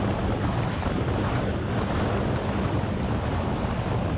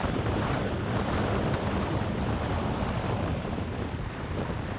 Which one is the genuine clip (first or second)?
first